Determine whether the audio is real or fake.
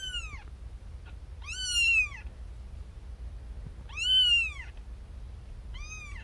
real